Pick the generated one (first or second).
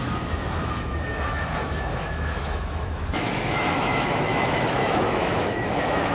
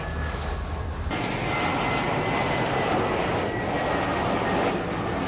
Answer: first